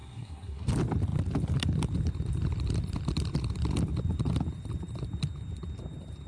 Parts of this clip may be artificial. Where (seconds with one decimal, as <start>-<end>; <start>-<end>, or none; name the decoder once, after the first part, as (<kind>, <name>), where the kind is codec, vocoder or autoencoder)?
0.0-0.7 (codec, SNAC)